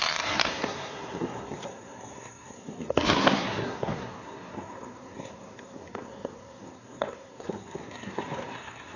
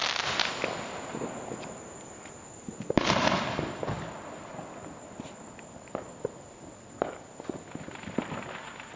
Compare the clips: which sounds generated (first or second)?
first